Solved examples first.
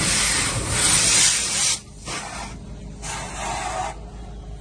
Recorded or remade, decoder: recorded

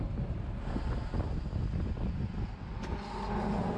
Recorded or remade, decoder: recorded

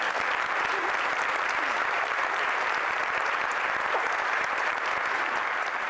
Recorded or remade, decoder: remade, vocoder, BigVGAN v2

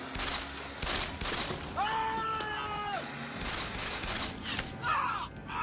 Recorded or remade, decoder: recorded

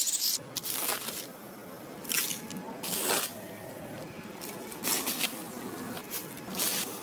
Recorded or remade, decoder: remade, vocoder, BigVGAN v2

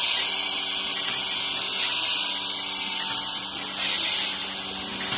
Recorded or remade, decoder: recorded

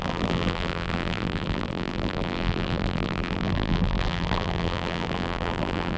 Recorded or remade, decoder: remade, vocoder, BigVGAN v2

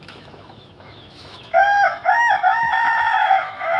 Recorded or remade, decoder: remade, autoencoder, DAC-VAE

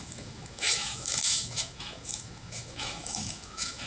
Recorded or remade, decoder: remade, autoencoder, DAC-VAE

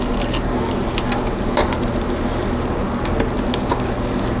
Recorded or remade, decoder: recorded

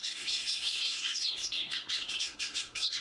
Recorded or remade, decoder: remade, codec, SNAC